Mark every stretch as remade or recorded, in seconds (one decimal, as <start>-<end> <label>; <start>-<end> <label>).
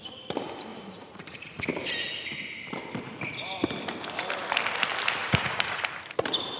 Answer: 0.0-0.7 recorded; 0.7-1.6 remade; 1.6-5.2 recorded; 5.2-5.8 remade; 5.8-6.6 recorded